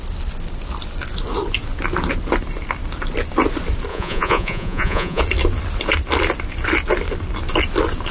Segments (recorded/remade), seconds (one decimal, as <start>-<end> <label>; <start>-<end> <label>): 0.0-3.9 recorded; 3.9-5.2 remade; 5.2-8.1 recorded